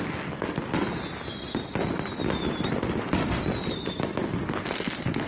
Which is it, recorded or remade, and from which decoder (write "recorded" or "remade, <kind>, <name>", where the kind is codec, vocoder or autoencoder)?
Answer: recorded